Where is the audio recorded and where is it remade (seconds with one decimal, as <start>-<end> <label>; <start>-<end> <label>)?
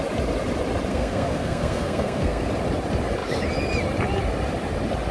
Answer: 0.0-0.9 recorded; 0.9-2.5 remade; 2.5-5.1 recorded